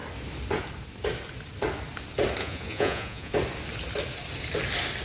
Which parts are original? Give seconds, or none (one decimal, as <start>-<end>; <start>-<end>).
0.0-2.4; 3.3-5.0